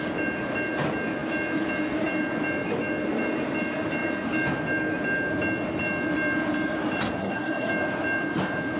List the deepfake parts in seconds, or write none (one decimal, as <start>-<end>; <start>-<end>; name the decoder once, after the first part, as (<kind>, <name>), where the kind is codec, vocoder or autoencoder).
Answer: 7.2-7.7 (codec, SNAC)